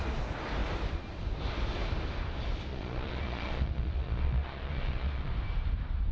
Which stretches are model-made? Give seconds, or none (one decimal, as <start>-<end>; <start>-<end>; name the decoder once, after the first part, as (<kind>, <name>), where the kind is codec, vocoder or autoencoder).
2.7-5.3 (vocoder, Vocos)